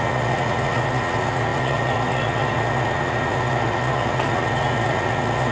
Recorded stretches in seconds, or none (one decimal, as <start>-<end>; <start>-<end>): none